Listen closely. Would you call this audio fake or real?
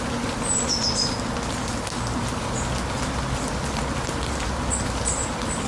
real